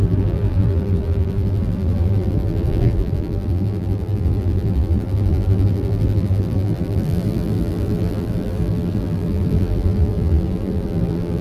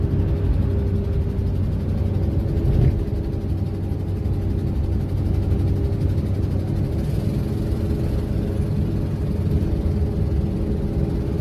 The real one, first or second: second